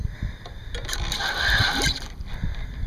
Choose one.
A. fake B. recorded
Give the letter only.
B